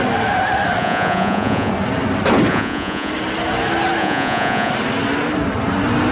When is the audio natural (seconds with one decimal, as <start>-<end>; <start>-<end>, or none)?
0.0-0.8; 1.7-2.5; 3.1-4.0; 4.7-6.1